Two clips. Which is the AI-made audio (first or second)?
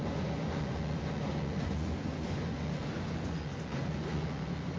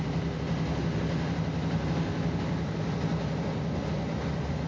first